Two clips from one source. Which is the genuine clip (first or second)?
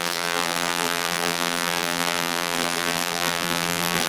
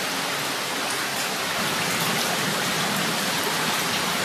second